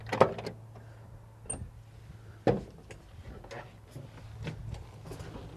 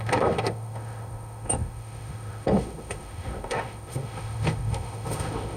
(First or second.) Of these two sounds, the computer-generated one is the second